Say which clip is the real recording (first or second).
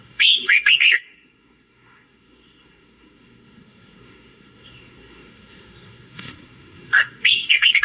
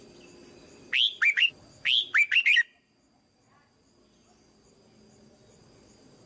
second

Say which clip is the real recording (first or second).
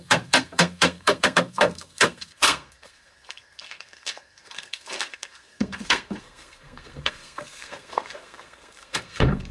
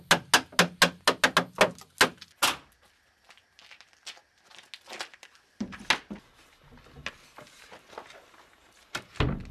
second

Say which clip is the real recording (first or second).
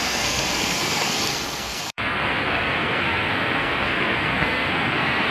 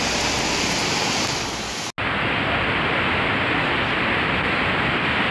second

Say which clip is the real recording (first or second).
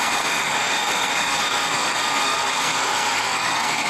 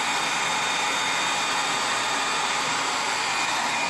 second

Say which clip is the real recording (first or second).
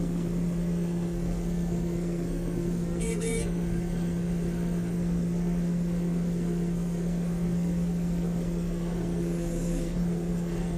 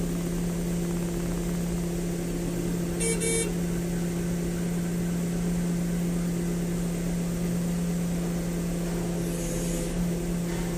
second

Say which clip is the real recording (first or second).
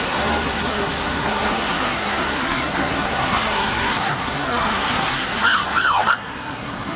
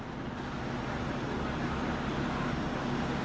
second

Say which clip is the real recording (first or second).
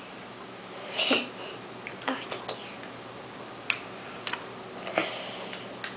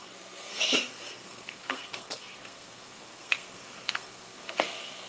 first